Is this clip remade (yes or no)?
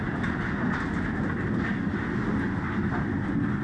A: no